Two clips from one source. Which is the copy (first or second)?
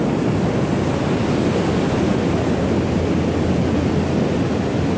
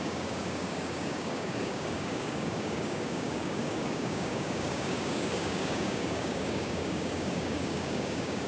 second